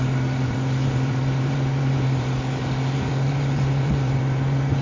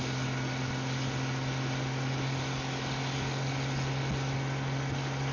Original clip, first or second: second